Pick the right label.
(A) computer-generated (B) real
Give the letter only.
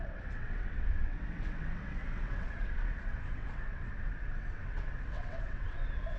A